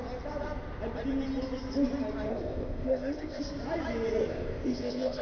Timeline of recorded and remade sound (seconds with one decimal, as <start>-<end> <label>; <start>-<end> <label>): 0.0-2.3 recorded; 2.3-3.4 remade; 3.4-4.2 recorded; 4.2-5.2 remade